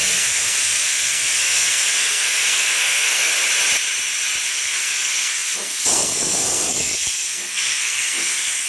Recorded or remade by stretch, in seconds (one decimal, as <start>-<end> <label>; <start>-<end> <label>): 0.0-3.3 remade; 3.3-4.5 recorded; 4.5-8.7 remade